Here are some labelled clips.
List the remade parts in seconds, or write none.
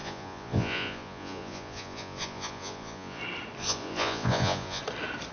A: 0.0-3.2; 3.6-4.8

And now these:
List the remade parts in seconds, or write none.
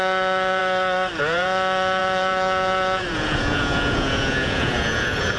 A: 0.0-0.6; 1.2-5.4